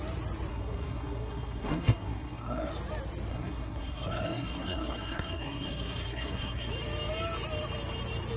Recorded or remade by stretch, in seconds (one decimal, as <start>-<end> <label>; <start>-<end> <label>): 0.0-0.5 recorded; 0.5-2.7 remade; 2.7-3.3 recorded; 3.3-6.7 remade; 6.7-8.4 recorded